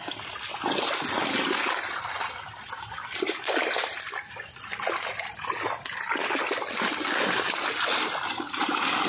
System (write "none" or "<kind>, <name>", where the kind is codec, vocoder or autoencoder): none